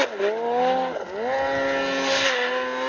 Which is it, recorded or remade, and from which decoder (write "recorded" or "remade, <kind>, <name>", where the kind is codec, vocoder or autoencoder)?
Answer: recorded